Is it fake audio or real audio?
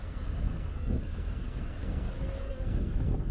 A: fake